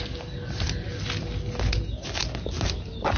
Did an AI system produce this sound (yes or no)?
no